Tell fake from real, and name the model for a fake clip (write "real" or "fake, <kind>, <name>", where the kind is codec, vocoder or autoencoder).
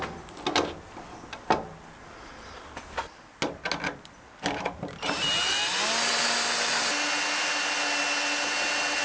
real